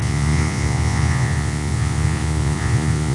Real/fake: fake